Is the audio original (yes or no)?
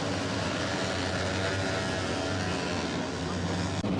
yes